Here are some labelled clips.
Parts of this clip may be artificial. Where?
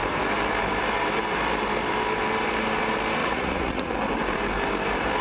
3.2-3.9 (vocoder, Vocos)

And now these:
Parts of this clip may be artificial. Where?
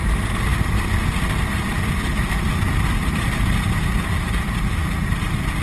none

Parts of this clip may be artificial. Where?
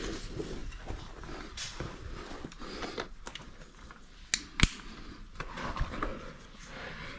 6.1-6.7 (vocoder, Vocos)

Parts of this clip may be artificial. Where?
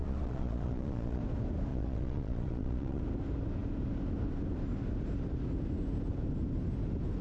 0.0-1.2 (vocoder, Vocos); 1.7-3.0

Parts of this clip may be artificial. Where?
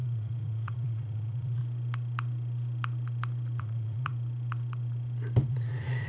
0.0-1.6 (vocoder, Vocos); 3.6-4.1; 5.5-6.1